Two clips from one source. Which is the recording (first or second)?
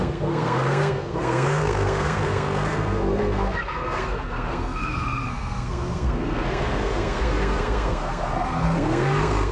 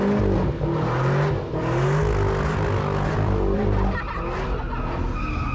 second